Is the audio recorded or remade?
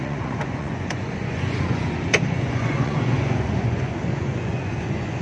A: remade